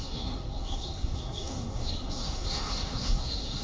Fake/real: fake